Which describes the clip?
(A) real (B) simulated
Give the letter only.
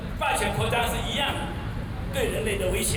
A